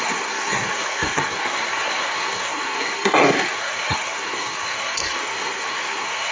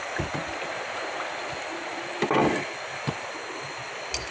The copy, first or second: first